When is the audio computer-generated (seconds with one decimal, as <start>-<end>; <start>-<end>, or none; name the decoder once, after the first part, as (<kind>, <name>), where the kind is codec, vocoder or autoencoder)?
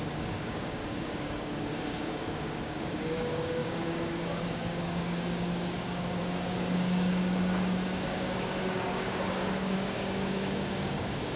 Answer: 0.0-11.4 (codec, DAC)